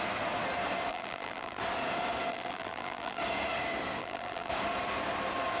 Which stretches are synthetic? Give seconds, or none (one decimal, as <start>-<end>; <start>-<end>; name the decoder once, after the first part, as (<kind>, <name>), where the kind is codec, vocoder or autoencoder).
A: 0.9-1.6 (vocoder, BigVGAN v2); 2.3-3.2; 4.0-4.5